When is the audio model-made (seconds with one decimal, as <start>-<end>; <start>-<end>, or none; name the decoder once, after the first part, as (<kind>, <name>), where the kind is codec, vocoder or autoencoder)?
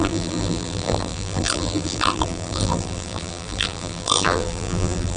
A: 0.0-5.2 (vocoder, BigVGAN v2)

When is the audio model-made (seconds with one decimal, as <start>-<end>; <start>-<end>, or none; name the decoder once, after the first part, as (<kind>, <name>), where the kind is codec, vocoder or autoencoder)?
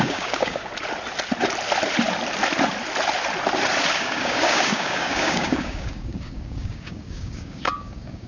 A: 0.0-0.7 (codec, DAC); 3.9-8.3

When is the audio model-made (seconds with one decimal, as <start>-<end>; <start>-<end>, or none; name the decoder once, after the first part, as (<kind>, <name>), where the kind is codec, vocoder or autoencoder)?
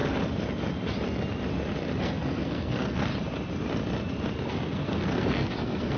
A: 2.0-3.1 (codec, SNAC); 4.5-6.0